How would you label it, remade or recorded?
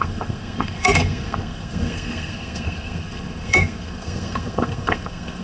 remade